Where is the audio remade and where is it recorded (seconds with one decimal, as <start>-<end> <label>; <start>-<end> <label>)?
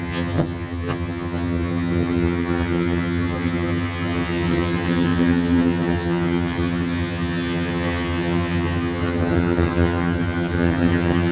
0.0-11.3 remade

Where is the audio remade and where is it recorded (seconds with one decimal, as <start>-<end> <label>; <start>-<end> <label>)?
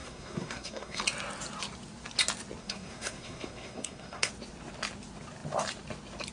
0.0-1.0 remade; 1.0-2.6 recorded; 2.6-4.3 remade; 4.3-6.3 recorded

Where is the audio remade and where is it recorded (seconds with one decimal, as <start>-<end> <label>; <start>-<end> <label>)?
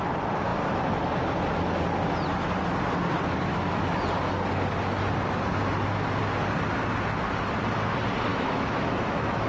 0.0-3.5 recorded; 3.5-4.0 remade; 4.0-8.3 recorded; 8.3-9.5 remade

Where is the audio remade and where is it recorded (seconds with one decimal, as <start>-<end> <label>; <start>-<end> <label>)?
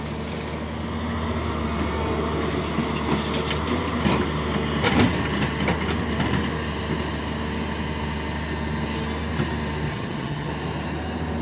0.0-9.9 recorded; 9.9-10.5 remade; 10.5-11.4 recorded